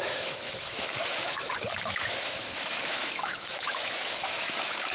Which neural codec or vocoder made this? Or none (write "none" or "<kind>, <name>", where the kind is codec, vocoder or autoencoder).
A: autoencoder, DAC-VAE